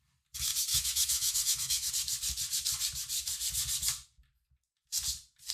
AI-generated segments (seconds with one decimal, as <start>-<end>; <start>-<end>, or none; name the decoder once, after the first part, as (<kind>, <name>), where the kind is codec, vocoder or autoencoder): 0.7-1.9 (autoencoder, DAC-VAE)

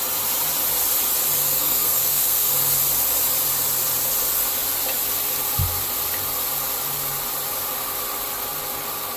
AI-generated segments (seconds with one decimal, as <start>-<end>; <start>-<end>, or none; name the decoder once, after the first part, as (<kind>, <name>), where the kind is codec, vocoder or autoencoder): 1.4-2.5 (codec, SNAC)

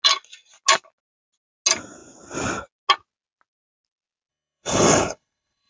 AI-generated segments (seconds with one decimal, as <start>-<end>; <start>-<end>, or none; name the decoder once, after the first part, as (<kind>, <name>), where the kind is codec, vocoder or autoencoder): 4.3-5.7 (codec, HILCodec)

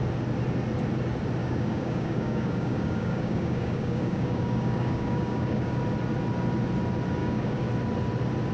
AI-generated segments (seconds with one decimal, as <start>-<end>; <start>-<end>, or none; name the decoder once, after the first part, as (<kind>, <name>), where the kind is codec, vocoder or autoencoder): 1.4-5.8 (codec, DAC); 7.2-7.7

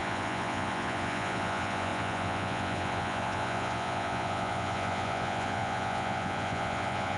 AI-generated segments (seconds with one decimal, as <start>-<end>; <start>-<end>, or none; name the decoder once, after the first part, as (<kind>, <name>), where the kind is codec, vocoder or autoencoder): 0.0-7.2 (vocoder, Vocos)